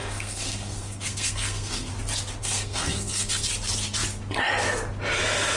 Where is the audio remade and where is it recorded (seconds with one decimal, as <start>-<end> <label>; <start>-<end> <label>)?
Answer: 0.0-1.9 remade; 1.9-2.4 recorded; 2.4-3.5 remade; 3.5-5.6 recorded